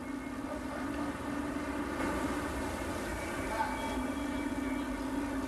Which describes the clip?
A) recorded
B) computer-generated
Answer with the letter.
A